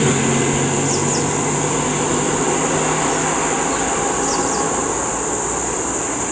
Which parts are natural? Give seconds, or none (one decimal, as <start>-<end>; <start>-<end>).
0.0-6.3